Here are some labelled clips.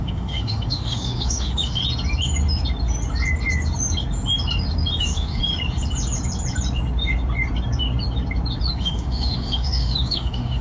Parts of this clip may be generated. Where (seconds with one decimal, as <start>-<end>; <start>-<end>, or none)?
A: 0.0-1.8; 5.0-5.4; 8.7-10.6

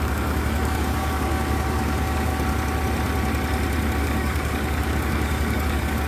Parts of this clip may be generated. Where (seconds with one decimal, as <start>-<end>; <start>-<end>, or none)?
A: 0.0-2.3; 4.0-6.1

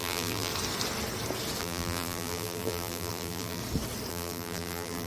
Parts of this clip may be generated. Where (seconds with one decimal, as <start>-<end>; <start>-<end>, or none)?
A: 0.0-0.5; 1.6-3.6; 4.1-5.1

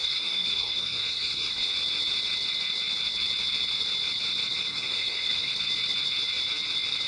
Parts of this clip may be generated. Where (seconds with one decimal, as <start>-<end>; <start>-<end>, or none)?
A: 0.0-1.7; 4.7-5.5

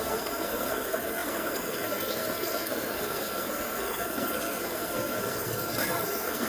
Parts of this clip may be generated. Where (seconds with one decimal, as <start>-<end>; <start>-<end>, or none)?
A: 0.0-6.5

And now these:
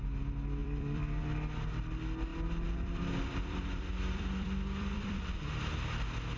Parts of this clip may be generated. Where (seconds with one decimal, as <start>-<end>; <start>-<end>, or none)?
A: 0.6-1.2; 2.3-5.2

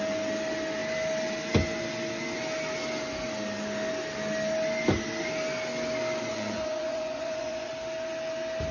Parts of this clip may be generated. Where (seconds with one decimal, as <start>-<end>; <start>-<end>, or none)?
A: 6.3-7.7